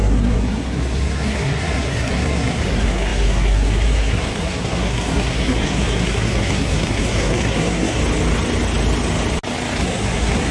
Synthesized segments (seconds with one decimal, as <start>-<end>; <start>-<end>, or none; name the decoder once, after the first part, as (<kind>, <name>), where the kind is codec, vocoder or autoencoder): 0.0-8.0 (codec, SNAC); 9.8-10.5